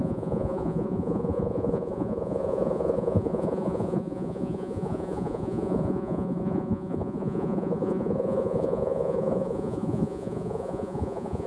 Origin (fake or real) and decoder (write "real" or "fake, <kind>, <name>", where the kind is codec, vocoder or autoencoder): fake, vocoder, Vocos